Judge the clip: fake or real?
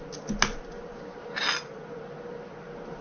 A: real